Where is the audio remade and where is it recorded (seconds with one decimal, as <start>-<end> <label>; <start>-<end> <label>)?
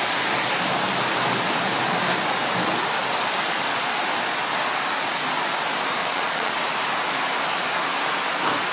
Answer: 0.0-6.0 recorded; 6.0-6.5 remade; 6.5-8.7 recorded